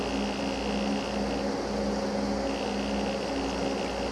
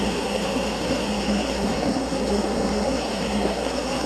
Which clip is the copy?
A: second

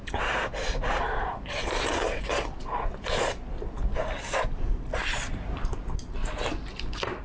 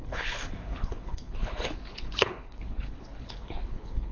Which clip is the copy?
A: second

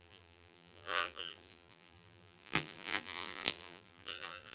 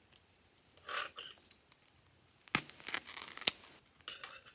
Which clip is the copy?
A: first